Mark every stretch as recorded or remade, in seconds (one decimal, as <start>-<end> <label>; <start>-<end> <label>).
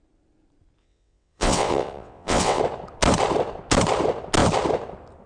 0.0-0.8 recorded; 0.8-2.6 remade; 2.6-5.3 recorded